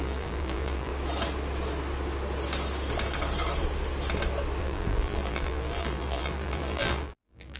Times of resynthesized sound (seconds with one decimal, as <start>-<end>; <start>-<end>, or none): 0.0-0.9; 4.6-7.6